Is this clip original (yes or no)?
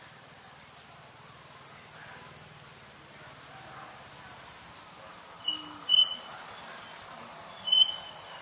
yes